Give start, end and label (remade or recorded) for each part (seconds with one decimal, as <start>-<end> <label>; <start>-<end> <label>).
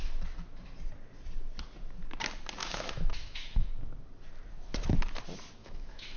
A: 0.0-2.6 recorded; 2.6-3.7 remade; 3.7-5.6 recorded; 5.6-6.2 remade